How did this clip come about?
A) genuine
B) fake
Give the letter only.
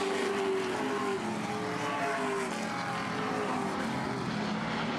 A